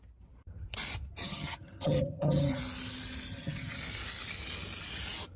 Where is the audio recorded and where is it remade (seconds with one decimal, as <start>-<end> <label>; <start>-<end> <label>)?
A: 0.0-1.2 recorded; 1.2-2.6 remade; 2.6-3.3 recorded; 3.3-3.8 remade; 3.8-5.4 recorded